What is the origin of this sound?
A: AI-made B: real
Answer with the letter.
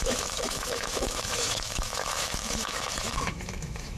A